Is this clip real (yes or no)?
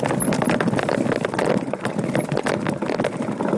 yes